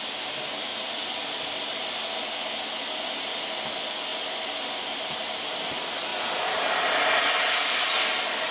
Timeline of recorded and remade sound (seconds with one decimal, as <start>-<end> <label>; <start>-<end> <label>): 0.0-6.1 recorded; 6.1-6.9 remade; 6.9-8.5 recorded